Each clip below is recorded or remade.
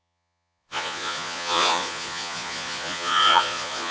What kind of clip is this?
remade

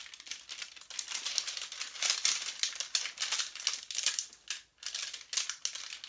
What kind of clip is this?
recorded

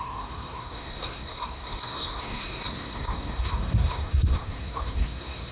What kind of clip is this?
remade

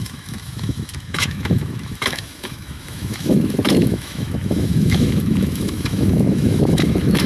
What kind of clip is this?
remade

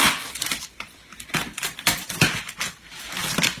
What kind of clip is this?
remade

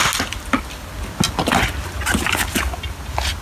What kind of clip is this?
recorded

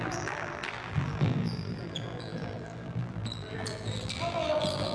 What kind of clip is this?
remade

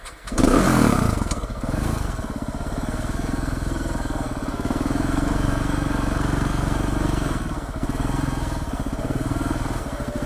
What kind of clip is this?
remade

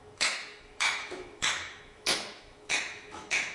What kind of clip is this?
remade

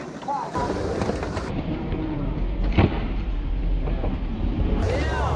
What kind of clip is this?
remade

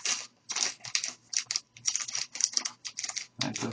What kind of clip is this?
recorded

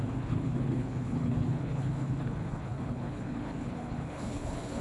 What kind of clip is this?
remade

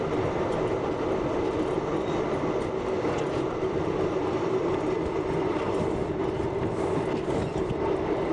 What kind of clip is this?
recorded